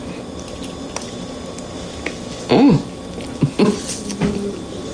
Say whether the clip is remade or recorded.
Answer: recorded